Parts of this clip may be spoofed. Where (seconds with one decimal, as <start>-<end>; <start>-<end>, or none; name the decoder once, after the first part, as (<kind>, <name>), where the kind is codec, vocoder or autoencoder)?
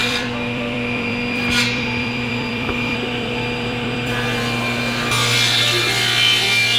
0.0-4.1 (vocoder, BigVGAN v2)